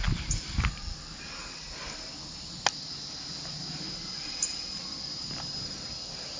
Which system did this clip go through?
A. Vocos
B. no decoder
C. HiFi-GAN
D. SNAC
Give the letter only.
B